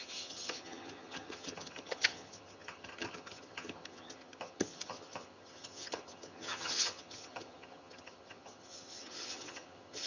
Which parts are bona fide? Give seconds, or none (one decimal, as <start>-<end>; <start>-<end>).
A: none